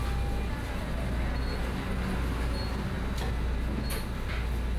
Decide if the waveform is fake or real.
real